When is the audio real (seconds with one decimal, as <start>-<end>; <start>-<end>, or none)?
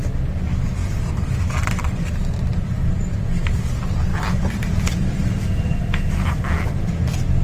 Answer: 0.0-0.8; 2.2-4.1; 5.2-7.4